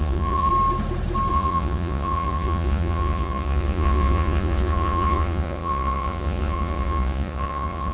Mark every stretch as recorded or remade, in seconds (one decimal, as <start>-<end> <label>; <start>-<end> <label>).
0.0-0.5 remade; 0.5-1.3 recorded; 1.3-7.9 remade